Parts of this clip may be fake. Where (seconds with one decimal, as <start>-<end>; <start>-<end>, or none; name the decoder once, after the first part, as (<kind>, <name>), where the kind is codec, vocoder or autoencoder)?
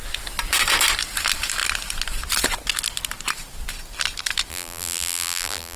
4.5-5.8 (vocoder, BigVGAN v2)